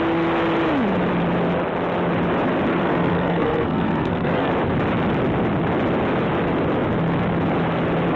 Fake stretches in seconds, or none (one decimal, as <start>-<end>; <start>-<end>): 2.7-4.5